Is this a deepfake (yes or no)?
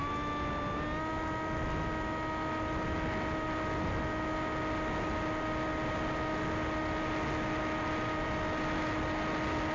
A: no